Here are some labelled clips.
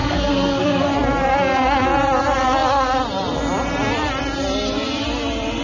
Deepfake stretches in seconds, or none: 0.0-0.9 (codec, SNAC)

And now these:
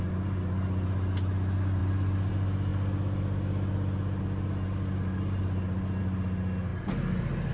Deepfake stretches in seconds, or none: none

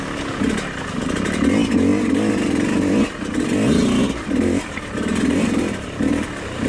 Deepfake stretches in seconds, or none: none

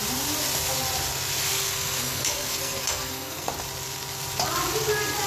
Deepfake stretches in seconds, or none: 1.5-3.5 (codec, SNAC)

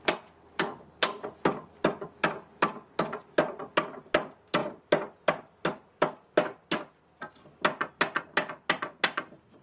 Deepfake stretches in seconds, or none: none